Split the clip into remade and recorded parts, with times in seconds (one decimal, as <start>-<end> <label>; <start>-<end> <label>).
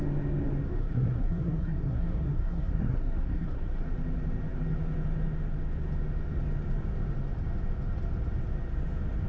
0.0-0.8 recorded; 0.8-3.8 remade; 3.8-9.3 recorded